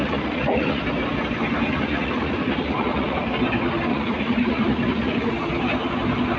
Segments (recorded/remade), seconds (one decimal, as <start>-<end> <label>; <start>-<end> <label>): 0.0-0.8 remade; 0.8-1.7 recorded; 1.7-3.2 remade; 3.2-3.9 recorded; 3.9-5.3 remade; 5.3-6.4 recorded